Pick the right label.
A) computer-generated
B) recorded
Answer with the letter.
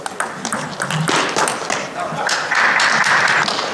B